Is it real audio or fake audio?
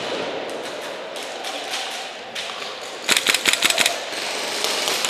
real